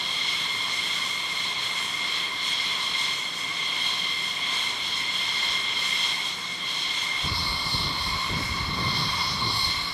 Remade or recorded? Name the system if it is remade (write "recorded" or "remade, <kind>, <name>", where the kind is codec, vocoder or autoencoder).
recorded